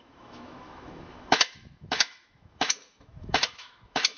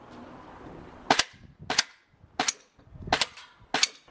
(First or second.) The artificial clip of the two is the first